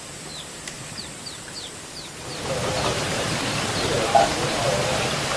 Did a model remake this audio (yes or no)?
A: yes